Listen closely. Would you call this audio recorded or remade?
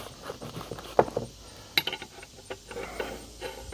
recorded